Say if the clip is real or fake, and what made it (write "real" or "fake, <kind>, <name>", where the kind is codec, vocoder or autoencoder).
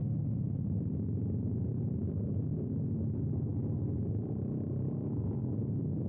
real